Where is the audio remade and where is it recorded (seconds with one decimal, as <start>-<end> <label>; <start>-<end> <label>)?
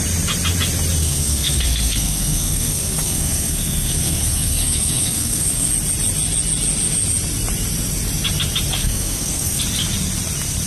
0.0-1.0 recorded; 1.0-5.7 remade; 5.7-8.8 recorded; 8.8-9.6 remade; 9.6-10.7 recorded